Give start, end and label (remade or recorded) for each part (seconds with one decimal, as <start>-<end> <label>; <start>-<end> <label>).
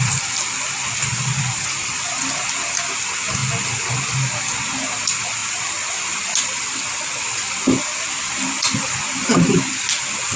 0.0-10.4 recorded